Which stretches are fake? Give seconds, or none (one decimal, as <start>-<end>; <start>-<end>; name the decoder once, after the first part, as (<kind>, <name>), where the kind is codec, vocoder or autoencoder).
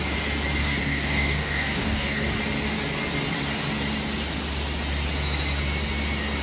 0.6-2.3 (codec, DAC)